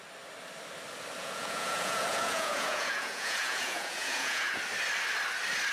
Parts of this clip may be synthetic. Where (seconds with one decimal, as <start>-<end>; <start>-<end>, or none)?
1.2-4.6